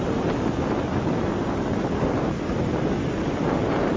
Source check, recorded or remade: recorded